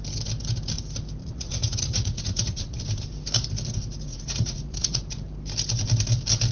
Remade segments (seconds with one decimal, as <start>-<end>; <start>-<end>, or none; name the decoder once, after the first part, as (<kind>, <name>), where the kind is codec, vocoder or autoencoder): 1.2-2.8 (vocoder, Vocos); 4.1-5.0